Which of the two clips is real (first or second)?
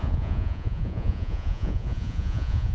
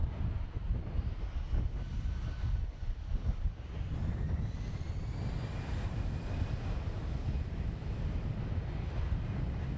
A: second